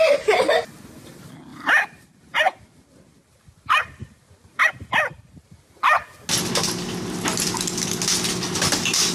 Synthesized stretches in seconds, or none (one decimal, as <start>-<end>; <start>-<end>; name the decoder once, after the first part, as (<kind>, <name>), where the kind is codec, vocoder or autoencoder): 1.5-4.7 (vocoder, BigVGAN v2)